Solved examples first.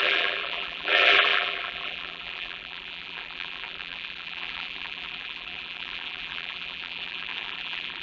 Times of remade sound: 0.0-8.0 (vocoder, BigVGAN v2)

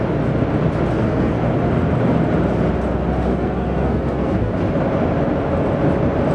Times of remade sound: 1.0-1.5 (codec, SNAC); 3.3-4.5

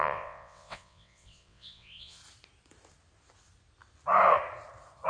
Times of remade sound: 0.0-2.2 (vocoder, WaveNeXt)